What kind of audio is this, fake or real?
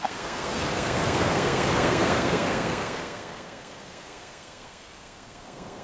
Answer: fake